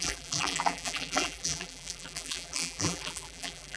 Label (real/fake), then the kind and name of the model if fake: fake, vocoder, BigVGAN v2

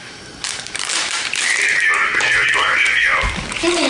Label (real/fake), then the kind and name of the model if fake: fake, vocoder, BigVGAN v2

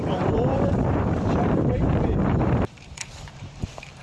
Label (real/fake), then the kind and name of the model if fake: fake, vocoder, BigVGAN v2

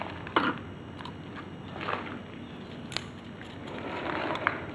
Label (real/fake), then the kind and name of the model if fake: real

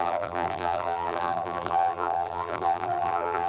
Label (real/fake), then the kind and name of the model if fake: fake, vocoder, BigVGAN v2